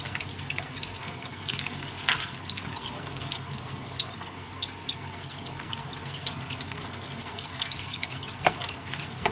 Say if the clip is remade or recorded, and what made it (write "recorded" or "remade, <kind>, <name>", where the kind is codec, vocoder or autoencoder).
remade, codec, SNAC